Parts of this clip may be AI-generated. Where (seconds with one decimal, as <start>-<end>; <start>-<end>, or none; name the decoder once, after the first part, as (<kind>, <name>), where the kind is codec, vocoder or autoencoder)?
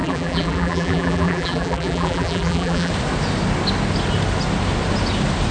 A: 0.0-2.9 (vocoder, BigVGAN v2)